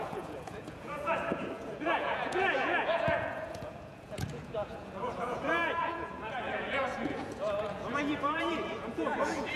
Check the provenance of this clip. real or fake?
fake